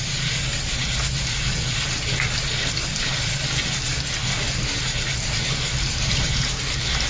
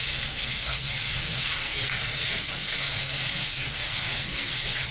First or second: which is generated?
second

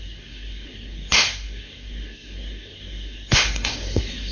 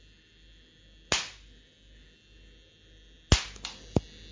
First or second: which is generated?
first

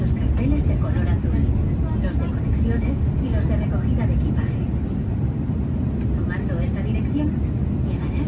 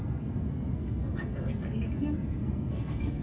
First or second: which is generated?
second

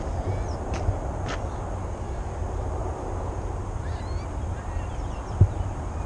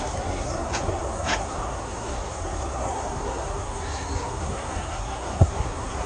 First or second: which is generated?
second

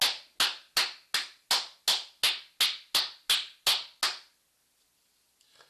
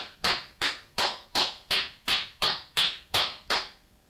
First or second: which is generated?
second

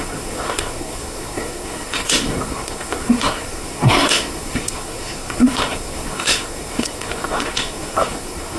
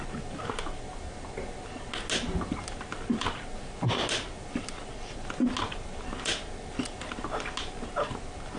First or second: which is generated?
first